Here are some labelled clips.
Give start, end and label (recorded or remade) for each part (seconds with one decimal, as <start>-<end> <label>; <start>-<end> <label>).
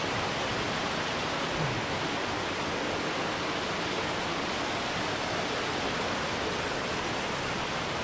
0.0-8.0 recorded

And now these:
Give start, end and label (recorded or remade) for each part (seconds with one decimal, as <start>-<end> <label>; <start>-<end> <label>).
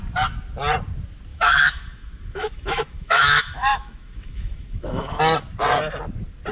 0.0-1.3 recorded; 1.3-5.2 remade; 5.2-6.5 recorded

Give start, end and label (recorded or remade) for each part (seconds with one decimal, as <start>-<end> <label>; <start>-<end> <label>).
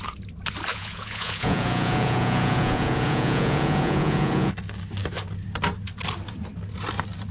0.0-0.7 recorded; 0.7-4.5 remade; 4.5-7.3 recorded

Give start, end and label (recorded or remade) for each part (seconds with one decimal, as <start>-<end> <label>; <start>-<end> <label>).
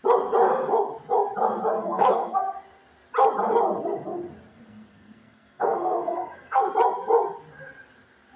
0.0-1.8 recorded; 1.8-2.4 remade; 2.4-4.5 recorded; 4.5-6.7 remade; 6.7-8.4 recorded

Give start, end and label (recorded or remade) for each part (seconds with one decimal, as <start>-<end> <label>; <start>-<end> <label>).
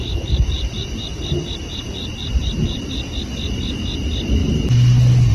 0.0-2.9 remade; 2.9-5.3 recorded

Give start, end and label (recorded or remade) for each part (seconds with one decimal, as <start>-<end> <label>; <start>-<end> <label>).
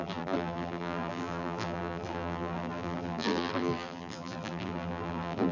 0.0-5.5 remade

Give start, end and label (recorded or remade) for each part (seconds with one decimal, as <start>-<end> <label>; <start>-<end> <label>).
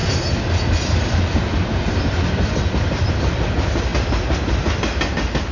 0.0-5.5 recorded